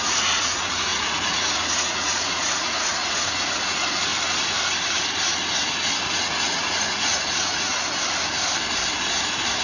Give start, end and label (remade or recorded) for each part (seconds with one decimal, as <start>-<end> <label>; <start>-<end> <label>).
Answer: 0.0-4.1 remade; 4.1-6.2 recorded; 6.2-7.7 remade; 7.7-9.6 recorded